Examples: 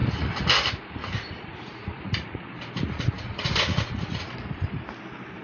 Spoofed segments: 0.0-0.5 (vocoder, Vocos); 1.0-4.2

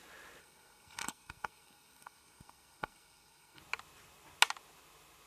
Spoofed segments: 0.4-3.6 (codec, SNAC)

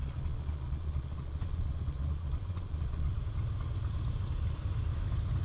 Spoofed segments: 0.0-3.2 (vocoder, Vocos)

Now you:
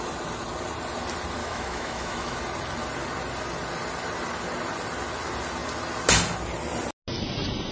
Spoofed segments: 1.4-2.4 (autoencoder, DAC-VAE)